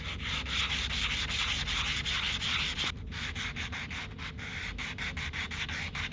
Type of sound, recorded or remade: recorded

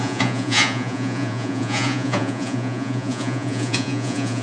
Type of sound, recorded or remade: remade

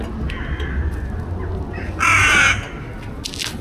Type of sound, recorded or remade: recorded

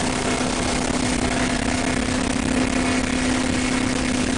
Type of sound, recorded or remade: recorded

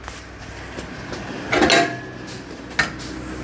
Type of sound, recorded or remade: recorded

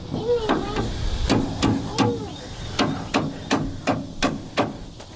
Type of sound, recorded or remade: recorded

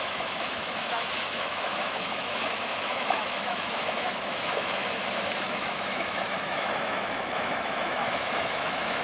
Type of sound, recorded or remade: remade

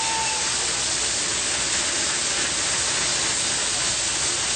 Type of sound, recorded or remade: recorded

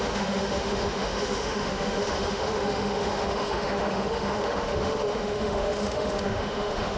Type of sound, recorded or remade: remade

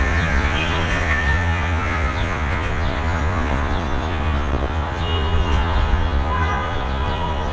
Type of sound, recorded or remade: remade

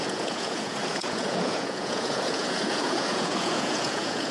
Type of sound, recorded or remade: remade